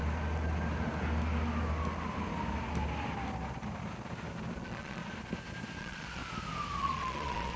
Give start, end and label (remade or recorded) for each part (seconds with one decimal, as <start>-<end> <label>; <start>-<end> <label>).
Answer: 0.0-4.6 recorded; 4.6-5.0 remade; 5.0-5.8 recorded; 5.8-6.2 remade; 6.2-6.8 recorded; 6.8-7.6 remade